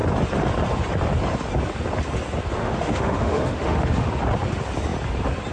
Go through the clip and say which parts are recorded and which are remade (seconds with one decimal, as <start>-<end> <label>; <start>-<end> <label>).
0.0-2.6 recorded; 2.6-4.1 remade; 4.1-5.5 recorded